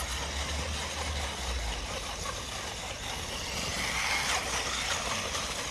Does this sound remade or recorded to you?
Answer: recorded